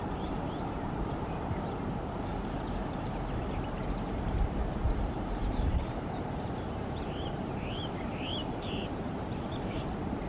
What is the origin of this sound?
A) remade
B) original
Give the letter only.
A